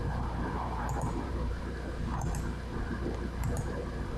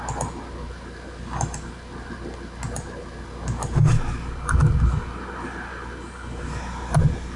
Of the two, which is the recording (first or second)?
second